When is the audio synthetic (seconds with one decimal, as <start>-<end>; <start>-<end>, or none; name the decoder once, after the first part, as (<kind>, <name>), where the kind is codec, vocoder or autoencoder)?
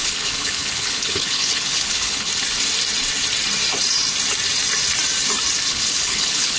0.0-2.3 (codec, HILCodec); 5.7-6.6